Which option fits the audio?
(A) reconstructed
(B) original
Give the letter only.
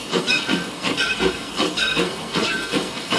A